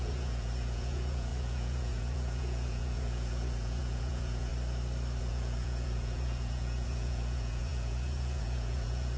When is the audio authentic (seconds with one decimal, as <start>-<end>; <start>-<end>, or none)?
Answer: 4.5-5.2